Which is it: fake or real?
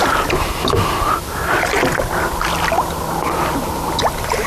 real